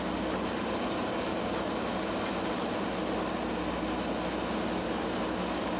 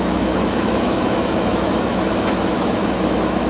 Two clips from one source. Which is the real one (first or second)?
first